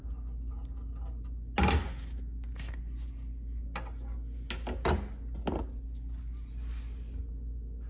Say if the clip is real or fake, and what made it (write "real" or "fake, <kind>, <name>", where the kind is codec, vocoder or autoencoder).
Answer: real